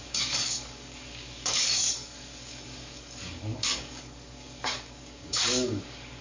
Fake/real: fake